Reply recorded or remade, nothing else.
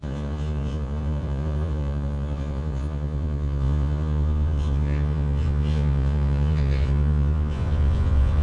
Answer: remade